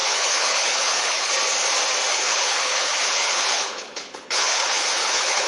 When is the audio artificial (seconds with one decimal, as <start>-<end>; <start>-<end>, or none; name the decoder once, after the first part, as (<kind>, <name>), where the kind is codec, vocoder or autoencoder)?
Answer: 0.0-1.3 (codec, HILCodec); 2.1-5.5